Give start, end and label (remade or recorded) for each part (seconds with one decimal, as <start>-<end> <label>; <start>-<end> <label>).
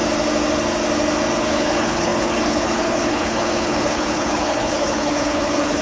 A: 0.0-1.4 recorded; 1.4-5.8 remade